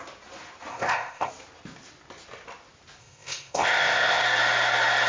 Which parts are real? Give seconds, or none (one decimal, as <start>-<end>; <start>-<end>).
0.0-0.7; 1.3-3.0; 4.2-5.1